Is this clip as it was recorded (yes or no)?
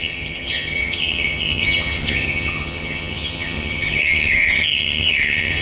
no